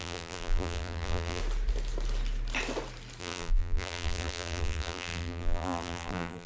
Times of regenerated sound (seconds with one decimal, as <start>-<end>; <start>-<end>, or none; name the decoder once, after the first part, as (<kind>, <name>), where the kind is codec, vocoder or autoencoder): 0.0-1.4 (vocoder, BigVGAN v2); 3.2-6.5